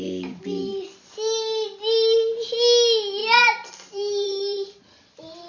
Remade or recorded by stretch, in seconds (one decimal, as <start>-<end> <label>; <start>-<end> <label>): 0.0-3.2 recorded; 3.2-4.8 remade; 4.8-5.5 recorded